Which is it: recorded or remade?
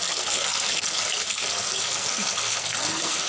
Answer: remade